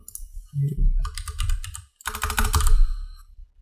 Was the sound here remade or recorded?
recorded